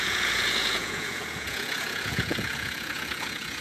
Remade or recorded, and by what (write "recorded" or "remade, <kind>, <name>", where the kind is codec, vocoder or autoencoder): remade, vocoder, Vocos